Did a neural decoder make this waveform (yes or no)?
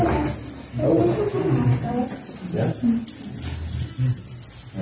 no